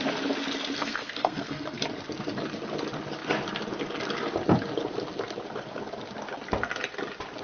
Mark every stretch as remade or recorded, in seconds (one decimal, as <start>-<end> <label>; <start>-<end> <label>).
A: 0.0-0.8 recorded; 0.8-1.8 remade; 1.8-7.4 recorded